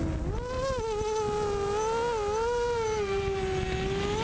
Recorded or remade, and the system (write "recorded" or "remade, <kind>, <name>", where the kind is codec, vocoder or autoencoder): recorded